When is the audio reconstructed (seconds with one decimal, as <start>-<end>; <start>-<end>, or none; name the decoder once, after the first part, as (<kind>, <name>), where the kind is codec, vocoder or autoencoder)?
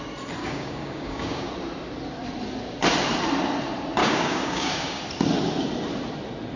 0.4-1.5 (codec, DAC); 4.0-5.0